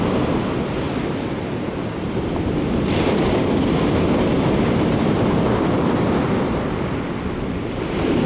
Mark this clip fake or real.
real